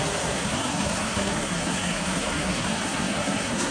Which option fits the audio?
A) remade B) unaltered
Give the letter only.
A